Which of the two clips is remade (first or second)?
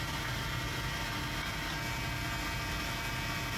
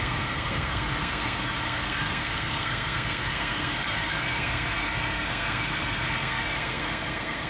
second